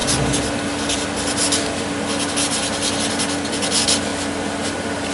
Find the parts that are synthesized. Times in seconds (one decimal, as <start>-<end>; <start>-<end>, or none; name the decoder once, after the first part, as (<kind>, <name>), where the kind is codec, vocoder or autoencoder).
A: none